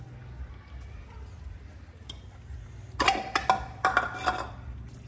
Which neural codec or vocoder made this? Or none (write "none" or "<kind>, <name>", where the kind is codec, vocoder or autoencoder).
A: none